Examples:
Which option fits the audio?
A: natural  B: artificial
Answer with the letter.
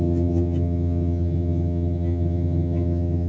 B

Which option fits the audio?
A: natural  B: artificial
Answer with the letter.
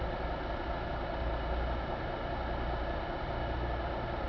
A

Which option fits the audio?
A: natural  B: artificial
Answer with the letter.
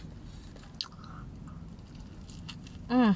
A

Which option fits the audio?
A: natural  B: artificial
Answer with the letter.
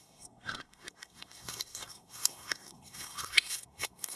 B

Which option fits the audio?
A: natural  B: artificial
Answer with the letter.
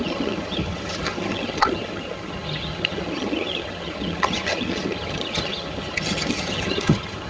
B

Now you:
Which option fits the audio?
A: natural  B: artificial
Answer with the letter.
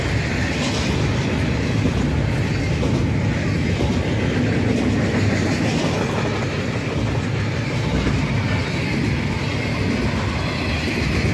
A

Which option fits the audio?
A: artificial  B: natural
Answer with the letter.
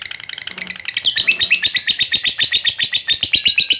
B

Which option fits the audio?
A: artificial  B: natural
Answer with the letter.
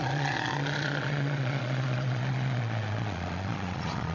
A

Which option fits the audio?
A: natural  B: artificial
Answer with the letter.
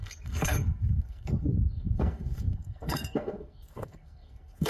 B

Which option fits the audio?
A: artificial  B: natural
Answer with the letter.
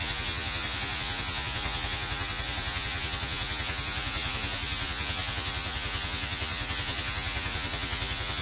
A